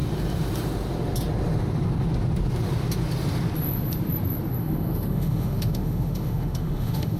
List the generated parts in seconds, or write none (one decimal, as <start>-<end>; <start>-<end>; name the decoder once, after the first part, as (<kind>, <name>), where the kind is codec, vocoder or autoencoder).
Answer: 4.6-7.2 (autoencoder, DAC-VAE)